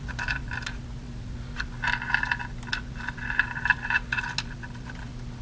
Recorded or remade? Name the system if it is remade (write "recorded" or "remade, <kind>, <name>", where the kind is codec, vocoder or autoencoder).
recorded